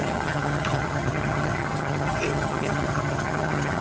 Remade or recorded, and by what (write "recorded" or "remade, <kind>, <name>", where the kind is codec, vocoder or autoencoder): remade, vocoder, HiFi-GAN